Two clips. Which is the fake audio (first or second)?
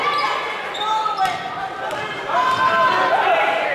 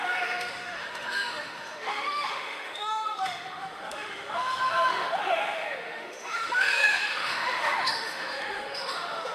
second